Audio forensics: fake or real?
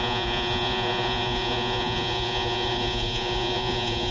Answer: fake